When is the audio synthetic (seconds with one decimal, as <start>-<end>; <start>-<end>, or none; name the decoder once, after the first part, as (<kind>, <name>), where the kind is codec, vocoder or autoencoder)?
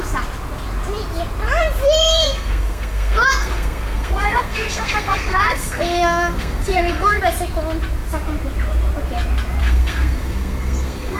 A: 2.0-7.2 (codec, SNAC); 9.6-11.2